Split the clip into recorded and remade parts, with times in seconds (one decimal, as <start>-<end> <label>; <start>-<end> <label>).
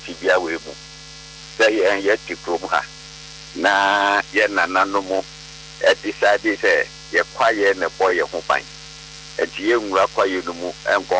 0.0-1.4 recorded; 1.4-2.0 remade; 2.0-3.0 recorded; 3.0-6.6 remade; 6.6-8.1 recorded; 8.1-11.2 remade